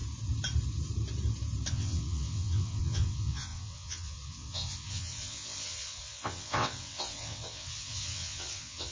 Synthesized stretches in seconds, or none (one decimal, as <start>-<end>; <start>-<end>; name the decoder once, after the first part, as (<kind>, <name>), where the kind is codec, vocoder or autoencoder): 1.7-8.9 (vocoder, WaveNeXt)

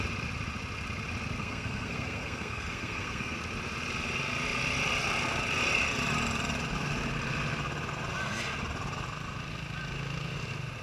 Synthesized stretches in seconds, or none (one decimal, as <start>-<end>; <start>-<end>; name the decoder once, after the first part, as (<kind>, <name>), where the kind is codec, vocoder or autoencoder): 1.4-3.4 (codec, SNAC)

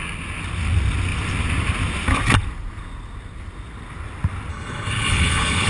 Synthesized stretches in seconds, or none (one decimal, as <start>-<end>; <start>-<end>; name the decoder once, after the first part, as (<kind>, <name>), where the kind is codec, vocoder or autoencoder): 4.5-5.7 (codec, HILCodec)

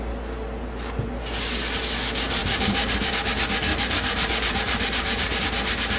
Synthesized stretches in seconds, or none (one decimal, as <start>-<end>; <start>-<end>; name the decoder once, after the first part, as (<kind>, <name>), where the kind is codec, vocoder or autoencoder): 2.4-3.1 (vocoder, BigVGAN v2); 3.7-5.4

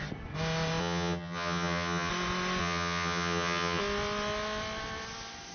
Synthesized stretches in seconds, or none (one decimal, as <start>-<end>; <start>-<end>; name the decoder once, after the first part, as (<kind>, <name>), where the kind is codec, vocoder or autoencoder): 0.8-2.1 (vocoder, HiFi-GAN); 2.6-3.8

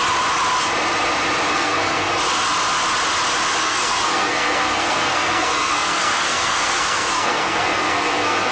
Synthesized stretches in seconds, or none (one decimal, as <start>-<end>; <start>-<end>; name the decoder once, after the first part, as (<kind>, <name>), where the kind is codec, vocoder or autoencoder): 1.5-2.1 (codec, SNAC); 3.6-8.5